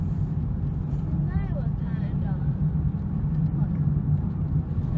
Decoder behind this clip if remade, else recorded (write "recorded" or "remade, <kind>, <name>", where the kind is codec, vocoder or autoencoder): recorded